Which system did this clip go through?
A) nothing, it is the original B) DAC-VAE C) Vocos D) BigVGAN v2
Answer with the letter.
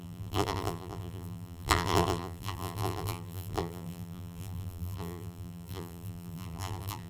D